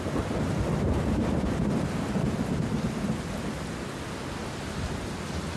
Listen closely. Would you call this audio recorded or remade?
recorded